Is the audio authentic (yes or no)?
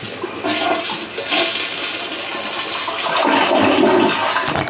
yes